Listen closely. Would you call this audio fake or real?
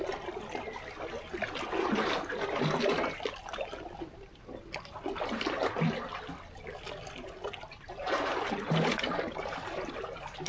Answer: real